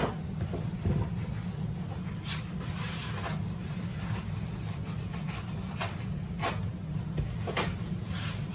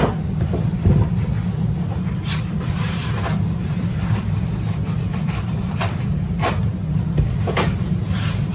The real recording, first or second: first